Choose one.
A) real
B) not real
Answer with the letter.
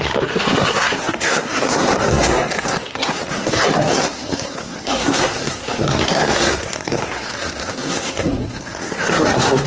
B